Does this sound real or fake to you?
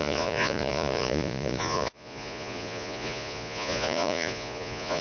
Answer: fake